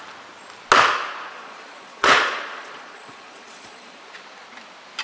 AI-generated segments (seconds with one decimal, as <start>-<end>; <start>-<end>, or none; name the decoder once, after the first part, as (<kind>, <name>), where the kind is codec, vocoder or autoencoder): 1.3-4.1 (vocoder, Vocos)